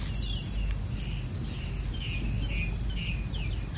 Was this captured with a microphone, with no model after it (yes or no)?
yes